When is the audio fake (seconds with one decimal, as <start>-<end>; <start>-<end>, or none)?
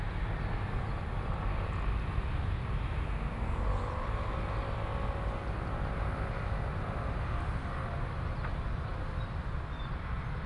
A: 8.9-9.5